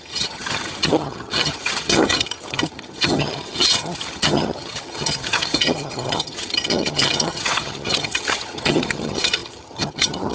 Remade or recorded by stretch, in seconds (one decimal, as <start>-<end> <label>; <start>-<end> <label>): 0.0-10.3 remade